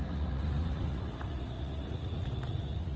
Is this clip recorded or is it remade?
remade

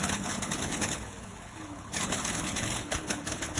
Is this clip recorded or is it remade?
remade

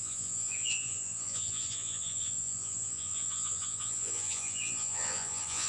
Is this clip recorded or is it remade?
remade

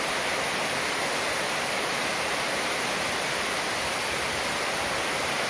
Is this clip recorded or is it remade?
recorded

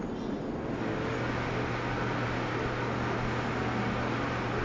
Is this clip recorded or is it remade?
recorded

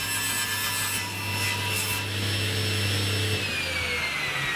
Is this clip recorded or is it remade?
recorded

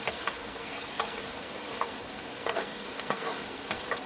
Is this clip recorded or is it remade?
remade